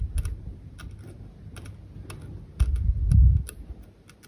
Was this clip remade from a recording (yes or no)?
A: no